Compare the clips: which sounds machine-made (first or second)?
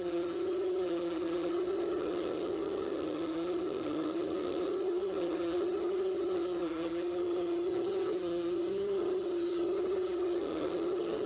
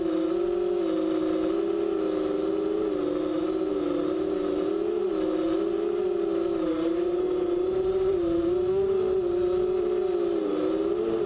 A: first